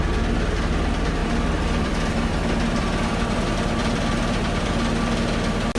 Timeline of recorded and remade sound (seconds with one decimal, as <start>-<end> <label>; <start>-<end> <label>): 0.0-1.2 recorded; 1.2-4.7 remade; 4.7-5.8 recorded